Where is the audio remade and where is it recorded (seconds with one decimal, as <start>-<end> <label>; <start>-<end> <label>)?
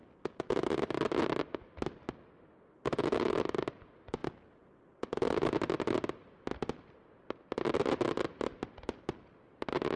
0.0-10.0 recorded